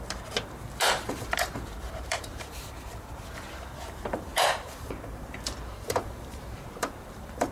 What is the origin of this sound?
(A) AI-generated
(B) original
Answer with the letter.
A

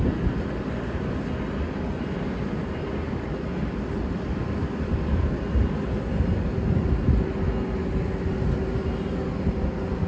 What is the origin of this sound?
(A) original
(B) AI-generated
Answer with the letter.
A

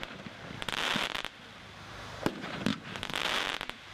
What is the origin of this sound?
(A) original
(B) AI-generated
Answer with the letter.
A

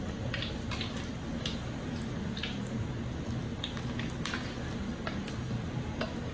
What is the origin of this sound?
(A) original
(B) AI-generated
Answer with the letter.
A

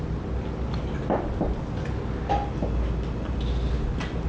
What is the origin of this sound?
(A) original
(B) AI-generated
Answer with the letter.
A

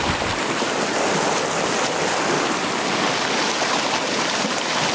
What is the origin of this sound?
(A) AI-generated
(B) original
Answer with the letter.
B